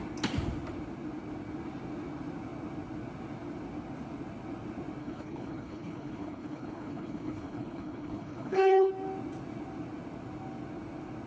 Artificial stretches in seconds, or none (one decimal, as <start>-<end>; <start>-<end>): 5.0-8.9